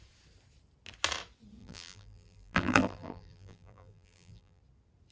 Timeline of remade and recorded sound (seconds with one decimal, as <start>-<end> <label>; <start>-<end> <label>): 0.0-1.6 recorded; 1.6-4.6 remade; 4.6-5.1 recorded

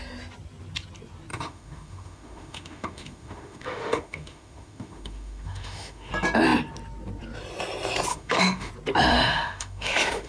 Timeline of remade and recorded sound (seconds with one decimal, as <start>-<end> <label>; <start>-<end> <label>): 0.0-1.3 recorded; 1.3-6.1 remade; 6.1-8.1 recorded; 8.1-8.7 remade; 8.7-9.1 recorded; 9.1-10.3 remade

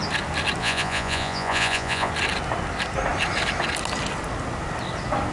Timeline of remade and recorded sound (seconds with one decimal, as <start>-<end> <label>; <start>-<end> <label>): 0.0-0.6 recorded; 0.6-2.1 remade; 2.1-5.3 recorded

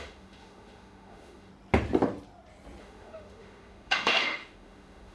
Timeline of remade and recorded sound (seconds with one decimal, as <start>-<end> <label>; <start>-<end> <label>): 0.0-1.5 remade; 1.5-2.8 recorded; 2.8-5.1 remade

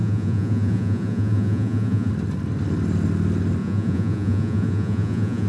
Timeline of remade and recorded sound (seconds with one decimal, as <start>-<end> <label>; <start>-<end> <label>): 0.0-2.1 remade; 2.1-3.6 recorded; 3.6-5.5 remade